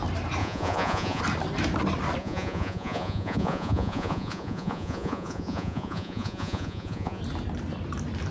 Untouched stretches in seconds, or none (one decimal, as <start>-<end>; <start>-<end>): 0.0-0.4; 1.2-2.2; 7.2-8.3